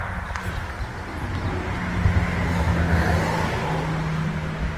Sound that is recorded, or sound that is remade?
recorded